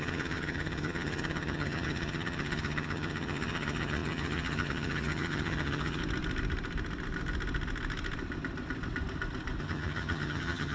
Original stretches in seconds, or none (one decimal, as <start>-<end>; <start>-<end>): 6.0-9.6